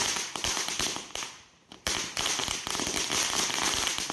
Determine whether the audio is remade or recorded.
recorded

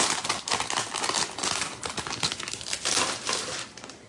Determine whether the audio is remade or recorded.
recorded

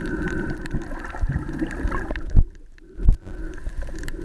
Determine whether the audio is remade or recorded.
remade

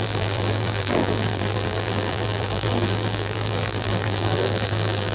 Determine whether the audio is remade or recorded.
remade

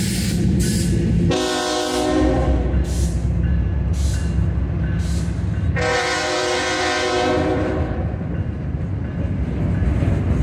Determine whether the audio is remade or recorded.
recorded